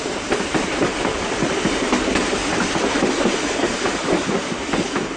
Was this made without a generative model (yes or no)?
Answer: yes